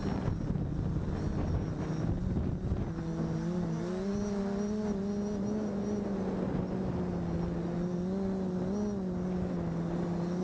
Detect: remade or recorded recorded